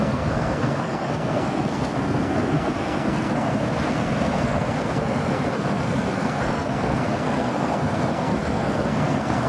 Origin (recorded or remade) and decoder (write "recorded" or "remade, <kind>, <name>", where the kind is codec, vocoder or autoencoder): remade, codec, SNAC